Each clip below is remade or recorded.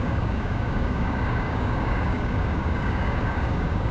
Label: remade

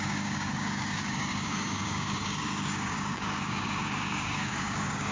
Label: remade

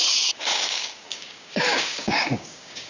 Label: remade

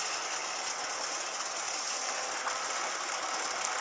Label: recorded